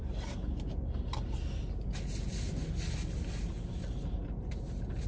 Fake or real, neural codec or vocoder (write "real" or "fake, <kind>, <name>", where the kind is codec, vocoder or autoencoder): real